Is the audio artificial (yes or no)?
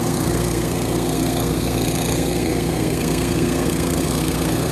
yes